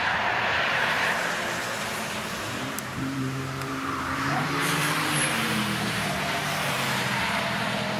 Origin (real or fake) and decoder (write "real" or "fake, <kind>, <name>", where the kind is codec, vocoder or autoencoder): fake, vocoder, BigVGAN v2